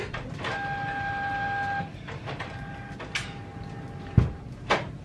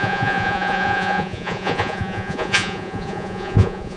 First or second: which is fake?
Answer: second